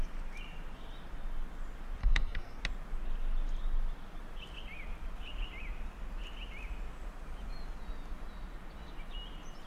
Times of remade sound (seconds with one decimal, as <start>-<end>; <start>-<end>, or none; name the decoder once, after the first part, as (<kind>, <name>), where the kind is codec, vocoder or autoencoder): 2.0-2.6 (codec, SNAC)